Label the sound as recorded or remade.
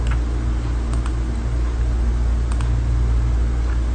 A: recorded